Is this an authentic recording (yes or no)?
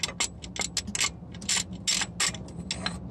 yes